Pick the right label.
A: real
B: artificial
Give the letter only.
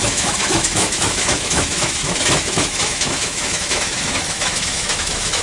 B